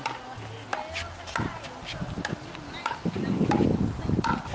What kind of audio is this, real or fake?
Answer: real